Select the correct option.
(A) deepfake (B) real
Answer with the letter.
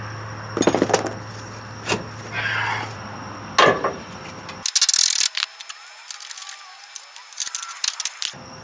B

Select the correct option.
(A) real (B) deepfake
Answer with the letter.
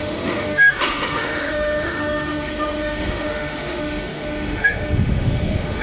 B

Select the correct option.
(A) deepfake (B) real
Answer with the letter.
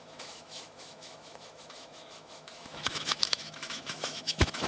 A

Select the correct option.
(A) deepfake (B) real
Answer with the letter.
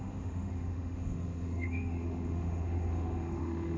A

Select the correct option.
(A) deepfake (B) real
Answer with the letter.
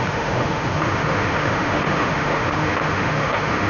A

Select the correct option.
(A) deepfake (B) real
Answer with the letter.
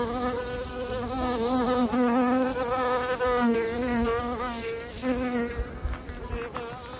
B